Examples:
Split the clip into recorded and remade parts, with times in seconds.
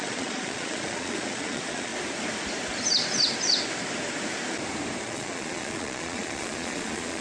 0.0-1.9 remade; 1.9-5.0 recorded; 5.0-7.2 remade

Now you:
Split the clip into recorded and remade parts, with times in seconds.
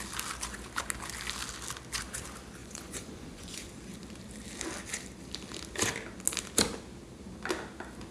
0.0-2.6 recorded; 2.6-3.7 remade; 3.7-8.1 recorded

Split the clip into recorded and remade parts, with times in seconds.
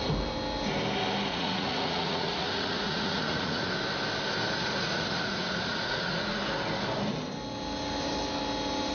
0.0-1.3 recorded; 1.3-3.7 remade; 3.7-4.6 recorded; 4.6-6.4 remade; 6.4-8.9 recorded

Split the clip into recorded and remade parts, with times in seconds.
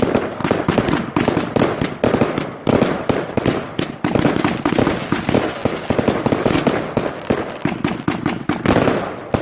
0.0-9.4 recorded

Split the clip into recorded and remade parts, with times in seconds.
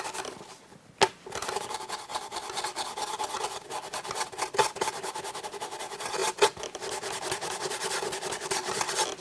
0.0-9.2 recorded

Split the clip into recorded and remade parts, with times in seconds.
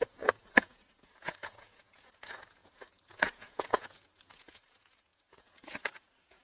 0.0-6.4 remade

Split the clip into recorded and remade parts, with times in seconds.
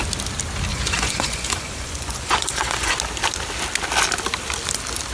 0.0-0.7 recorded; 0.7-2.9 remade; 2.9-5.1 recorded